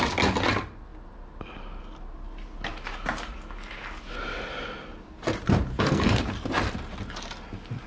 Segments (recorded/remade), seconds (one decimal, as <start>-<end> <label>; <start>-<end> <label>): 0.0-5.7 recorded; 5.7-6.2 remade; 6.2-7.9 recorded